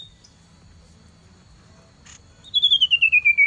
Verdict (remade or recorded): recorded